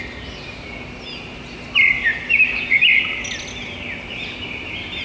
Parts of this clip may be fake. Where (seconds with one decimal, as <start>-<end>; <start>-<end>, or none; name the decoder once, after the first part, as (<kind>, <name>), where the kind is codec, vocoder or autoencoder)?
none